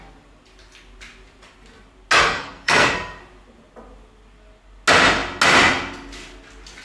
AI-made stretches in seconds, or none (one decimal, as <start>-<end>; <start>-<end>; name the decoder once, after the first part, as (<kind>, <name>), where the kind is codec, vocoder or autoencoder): 2.2-3.2 (codec, SNAC)